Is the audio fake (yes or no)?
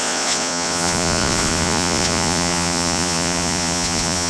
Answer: yes